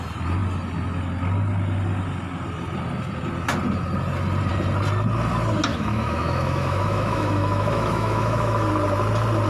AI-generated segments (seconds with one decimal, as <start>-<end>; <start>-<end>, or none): 5.7-8.7